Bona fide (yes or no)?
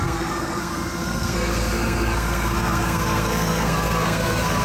no